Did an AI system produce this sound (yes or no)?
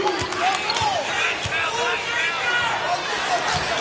no